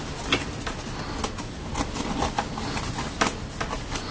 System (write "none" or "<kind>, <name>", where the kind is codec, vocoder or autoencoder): none